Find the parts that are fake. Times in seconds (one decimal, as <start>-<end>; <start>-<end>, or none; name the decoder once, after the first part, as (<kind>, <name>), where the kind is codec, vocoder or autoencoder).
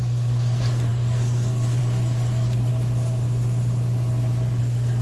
0.0-2.7 (codec, SNAC); 4.6-5.0